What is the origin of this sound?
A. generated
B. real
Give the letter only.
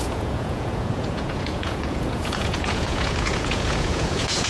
A